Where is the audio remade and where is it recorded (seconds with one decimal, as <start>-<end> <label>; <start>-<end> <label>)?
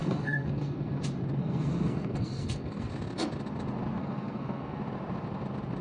0.0-1.0 remade; 1.0-1.4 recorded; 1.4-2.9 remade; 2.9-4.0 recorded; 4.0-4.8 remade; 4.8-5.8 recorded